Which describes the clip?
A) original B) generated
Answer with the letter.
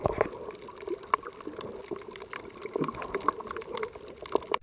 A